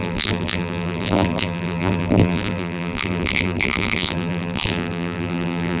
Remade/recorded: remade